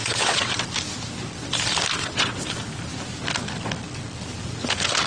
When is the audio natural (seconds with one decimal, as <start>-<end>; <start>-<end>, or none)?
0.6-1.9; 2.4-5.1